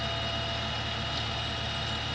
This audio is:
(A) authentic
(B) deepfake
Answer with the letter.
A